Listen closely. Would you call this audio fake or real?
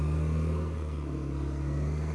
fake